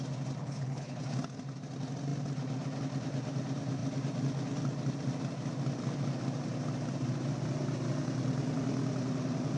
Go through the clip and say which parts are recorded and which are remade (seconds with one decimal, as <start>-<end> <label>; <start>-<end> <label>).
0.0-0.4 recorded; 0.4-1.0 remade; 1.0-9.6 recorded